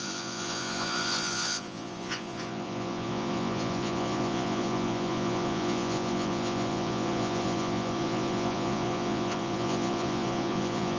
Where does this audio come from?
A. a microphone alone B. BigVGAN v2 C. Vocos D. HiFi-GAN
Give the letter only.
C